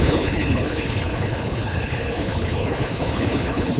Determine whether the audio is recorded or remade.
remade